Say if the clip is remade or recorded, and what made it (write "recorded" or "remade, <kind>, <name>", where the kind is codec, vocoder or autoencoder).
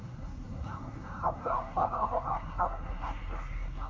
remade, codec, SNAC